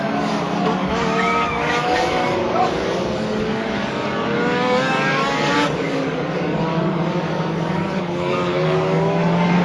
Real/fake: fake